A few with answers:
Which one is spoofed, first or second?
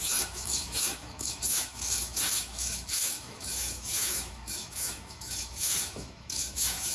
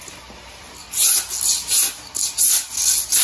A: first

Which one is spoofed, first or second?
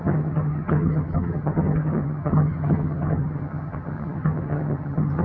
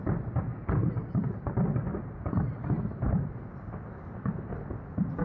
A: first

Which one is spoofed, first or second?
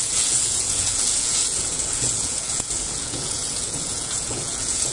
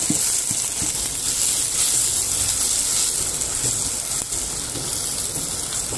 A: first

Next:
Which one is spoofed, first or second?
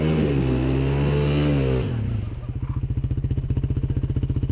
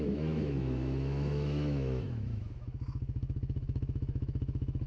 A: second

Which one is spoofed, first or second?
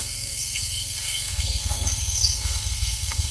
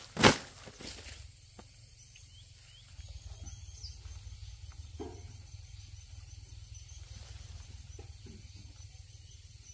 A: first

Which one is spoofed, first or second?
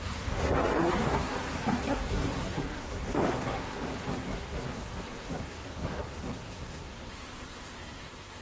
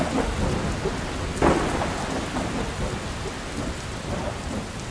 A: first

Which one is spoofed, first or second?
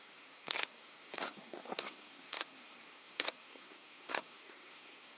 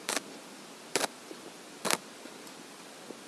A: first